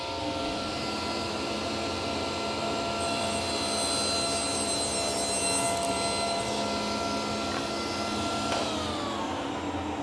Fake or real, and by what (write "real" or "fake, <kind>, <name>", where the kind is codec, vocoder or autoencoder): real